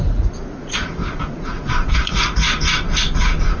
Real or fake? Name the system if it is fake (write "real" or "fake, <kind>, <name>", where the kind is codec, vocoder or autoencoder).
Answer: fake, vocoder, Vocos